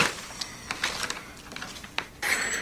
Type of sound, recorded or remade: recorded